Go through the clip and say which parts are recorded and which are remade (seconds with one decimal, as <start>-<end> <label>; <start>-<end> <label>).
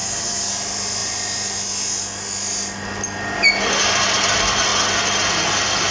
0.0-0.5 remade; 0.5-5.9 recorded